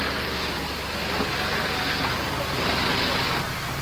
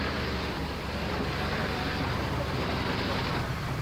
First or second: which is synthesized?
second